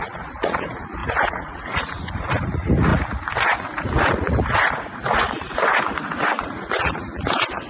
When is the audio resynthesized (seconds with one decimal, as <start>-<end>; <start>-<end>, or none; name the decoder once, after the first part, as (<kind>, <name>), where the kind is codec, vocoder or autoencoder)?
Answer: 0.0-7.7 (vocoder, Vocos)